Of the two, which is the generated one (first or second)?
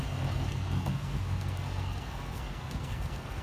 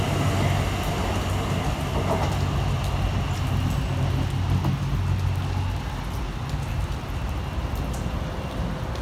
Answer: first